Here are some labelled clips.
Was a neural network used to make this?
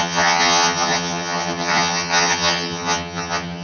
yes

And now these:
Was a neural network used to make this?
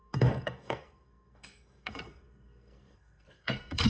yes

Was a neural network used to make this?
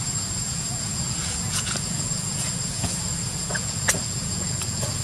yes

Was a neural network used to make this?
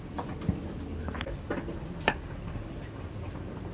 no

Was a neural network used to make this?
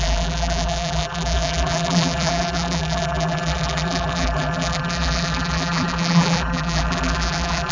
yes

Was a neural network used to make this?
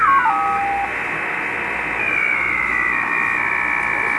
no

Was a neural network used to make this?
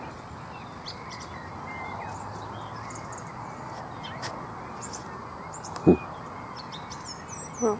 no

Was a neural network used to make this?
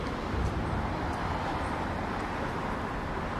no